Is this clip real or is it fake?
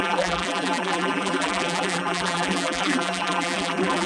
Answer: fake